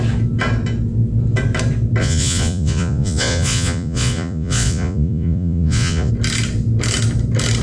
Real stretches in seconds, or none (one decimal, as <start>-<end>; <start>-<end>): 0.0-2.0; 6.1-7.6